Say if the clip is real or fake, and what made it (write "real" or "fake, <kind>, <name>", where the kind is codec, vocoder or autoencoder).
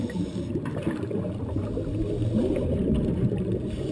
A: real